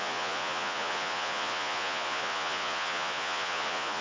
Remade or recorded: remade